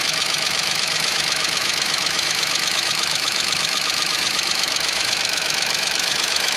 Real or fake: fake